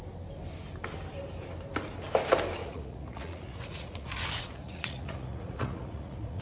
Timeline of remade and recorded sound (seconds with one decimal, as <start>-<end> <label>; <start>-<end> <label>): 0.0-2.6 recorded; 2.6-6.4 remade